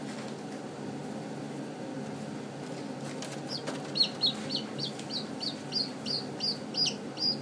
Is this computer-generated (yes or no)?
no